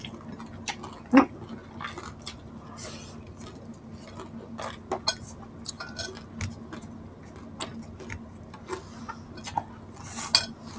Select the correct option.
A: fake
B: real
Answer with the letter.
B